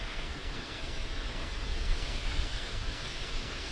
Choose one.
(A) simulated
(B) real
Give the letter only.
A